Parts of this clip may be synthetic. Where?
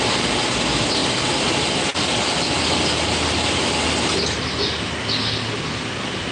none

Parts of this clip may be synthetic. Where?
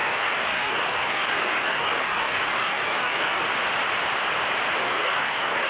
0.0-3.4 (codec, DAC); 4.8-5.7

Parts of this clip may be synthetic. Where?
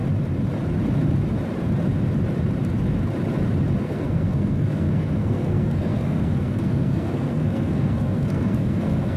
3.8-9.2 (codec, SNAC)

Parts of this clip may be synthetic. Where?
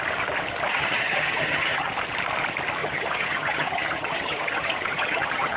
0.7-1.9 (vocoder, HiFi-GAN); 2.8-5.6